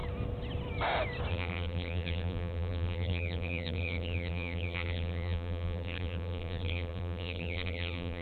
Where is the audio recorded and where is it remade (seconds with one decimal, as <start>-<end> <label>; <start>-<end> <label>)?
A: 0.0-1.3 recorded; 1.3-8.2 remade